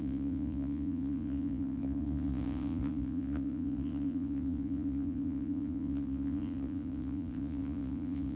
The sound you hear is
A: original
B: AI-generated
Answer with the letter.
B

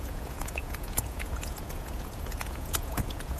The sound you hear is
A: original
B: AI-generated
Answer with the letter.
B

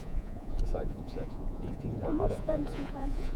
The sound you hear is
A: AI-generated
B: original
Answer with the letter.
A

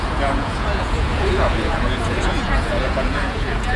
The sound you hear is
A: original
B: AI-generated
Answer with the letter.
B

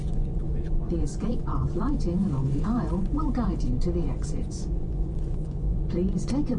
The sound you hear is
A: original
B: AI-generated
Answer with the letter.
B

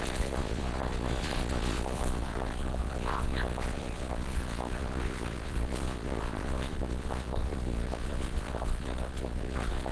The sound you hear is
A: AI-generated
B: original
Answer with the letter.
A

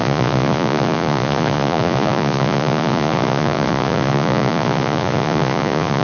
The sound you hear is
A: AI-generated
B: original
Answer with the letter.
A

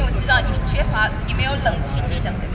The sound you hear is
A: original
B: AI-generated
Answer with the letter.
A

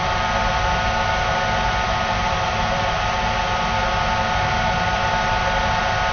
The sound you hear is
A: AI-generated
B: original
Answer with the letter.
B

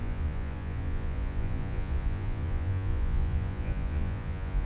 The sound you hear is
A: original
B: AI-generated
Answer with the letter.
B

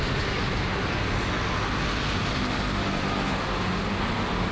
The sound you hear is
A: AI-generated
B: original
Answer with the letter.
B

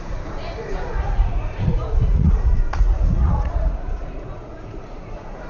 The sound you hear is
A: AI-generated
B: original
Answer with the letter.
A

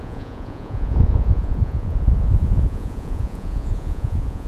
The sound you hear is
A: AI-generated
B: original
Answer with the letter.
A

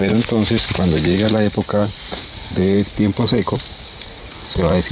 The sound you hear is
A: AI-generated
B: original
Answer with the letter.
A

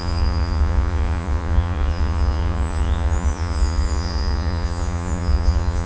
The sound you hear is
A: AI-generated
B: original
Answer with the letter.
A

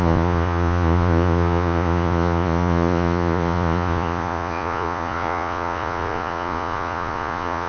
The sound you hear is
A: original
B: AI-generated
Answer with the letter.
B